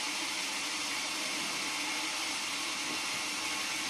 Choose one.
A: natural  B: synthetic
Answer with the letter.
A